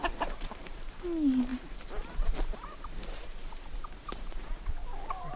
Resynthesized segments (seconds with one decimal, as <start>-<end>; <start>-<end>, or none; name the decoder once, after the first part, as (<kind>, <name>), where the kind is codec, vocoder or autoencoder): 0.0-0.8 (vocoder, BigVGAN v2); 1.5-4.7